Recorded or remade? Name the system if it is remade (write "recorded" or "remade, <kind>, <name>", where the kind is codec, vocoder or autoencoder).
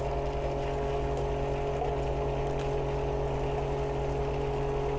recorded